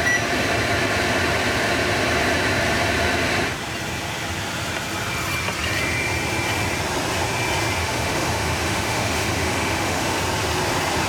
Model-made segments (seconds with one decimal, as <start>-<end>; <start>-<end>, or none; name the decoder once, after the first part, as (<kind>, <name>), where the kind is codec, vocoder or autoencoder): 7.8-10.2 (autoencoder, DAC-VAE)

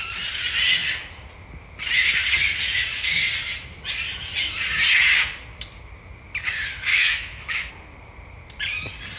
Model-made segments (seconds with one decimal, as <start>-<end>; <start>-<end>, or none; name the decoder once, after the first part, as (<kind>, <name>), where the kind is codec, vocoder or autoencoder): 6.9-7.7 (autoencoder, DAC-VAE)

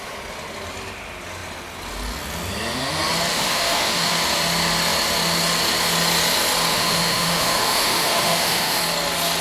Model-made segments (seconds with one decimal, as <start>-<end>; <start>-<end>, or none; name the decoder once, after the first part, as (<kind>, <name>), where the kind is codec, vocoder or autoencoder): 3.3-4.1 (autoencoder, DAC-VAE); 6.7-8.8

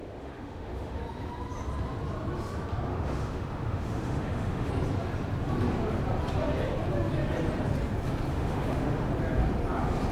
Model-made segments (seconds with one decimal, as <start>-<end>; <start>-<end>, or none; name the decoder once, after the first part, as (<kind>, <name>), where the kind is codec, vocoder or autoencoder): 0.0-1.0 (autoencoder, DAC-VAE); 2.9-4.7; 8.3-9.1

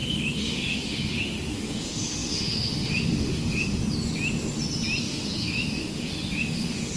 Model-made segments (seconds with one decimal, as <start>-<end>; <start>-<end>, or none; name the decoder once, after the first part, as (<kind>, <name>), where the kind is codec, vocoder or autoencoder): 0.0-3.8 (autoencoder, DAC-VAE); 5.0-7.0

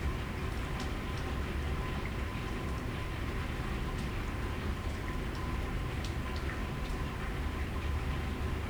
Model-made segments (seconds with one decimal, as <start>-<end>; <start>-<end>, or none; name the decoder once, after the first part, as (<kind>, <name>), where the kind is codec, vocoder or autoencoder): none